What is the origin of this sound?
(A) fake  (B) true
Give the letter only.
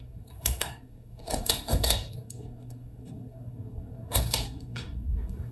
A